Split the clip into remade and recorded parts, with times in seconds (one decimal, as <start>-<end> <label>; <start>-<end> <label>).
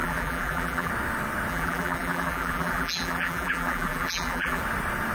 0.0-0.9 remade; 0.9-1.5 recorded; 1.5-4.6 remade; 4.6-5.1 recorded